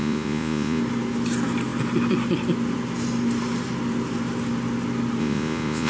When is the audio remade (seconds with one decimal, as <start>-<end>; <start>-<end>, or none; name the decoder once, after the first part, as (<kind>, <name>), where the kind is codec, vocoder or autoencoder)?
0.0-0.8 (vocoder, Vocos); 5.2-5.9